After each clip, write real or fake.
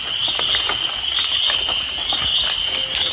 real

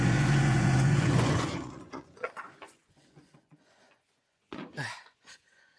fake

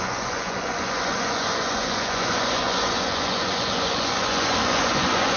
fake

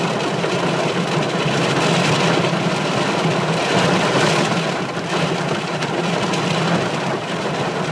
real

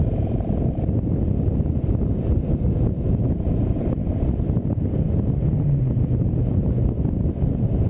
real